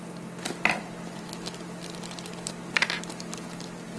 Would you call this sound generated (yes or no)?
no